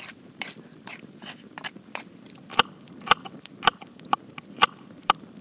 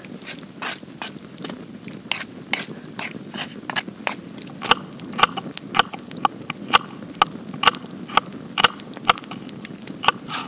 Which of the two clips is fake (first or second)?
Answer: first